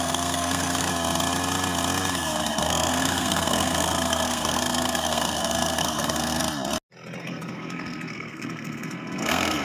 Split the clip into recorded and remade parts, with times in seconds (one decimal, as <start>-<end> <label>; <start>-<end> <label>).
0.0-0.9 remade; 0.9-2.1 recorded; 2.1-6.4 remade; 6.4-7.2 recorded; 7.2-9.6 remade